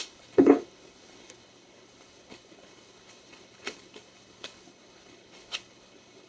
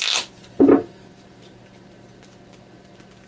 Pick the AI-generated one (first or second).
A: first